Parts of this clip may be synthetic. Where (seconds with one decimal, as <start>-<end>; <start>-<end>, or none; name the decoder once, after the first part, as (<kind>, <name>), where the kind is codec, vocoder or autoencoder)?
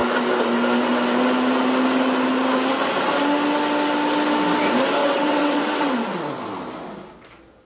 5.0-5.9 (vocoder, WaveNeXt)